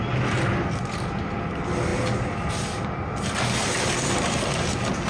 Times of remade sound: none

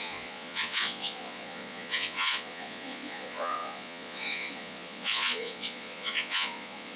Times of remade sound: 0.0-7.0

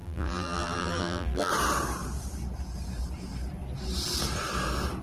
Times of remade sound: 0.0-1.5